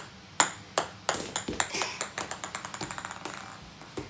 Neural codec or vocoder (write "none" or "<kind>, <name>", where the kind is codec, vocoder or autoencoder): none